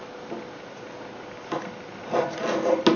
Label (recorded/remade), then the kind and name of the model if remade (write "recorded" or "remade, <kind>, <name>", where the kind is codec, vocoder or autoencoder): recorded